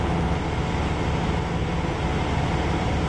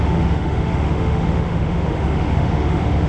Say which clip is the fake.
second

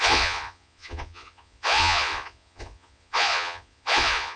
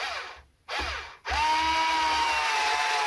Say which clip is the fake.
first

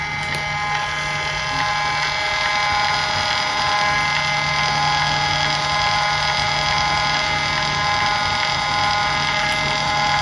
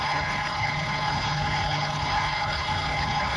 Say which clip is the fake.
second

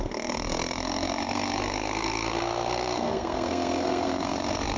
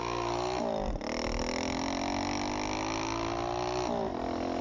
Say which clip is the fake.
first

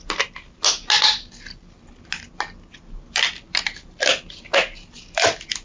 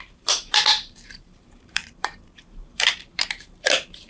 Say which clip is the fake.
second